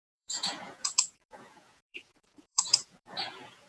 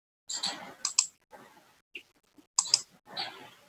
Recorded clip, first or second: second